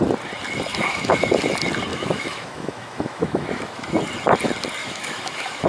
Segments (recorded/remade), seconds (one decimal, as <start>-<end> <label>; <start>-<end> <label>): 0.0-0.7 recorded; 0.7-1.4 remade; 1.4-1.9 recorded; 1.9-4.0 remade; 4.0-4.8 recorded; 4.8-5.7 remade